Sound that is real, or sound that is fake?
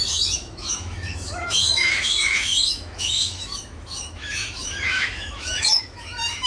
fake